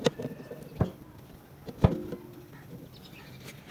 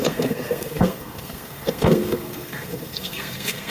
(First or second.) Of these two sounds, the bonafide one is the first